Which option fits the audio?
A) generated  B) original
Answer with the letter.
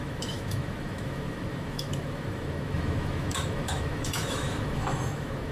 A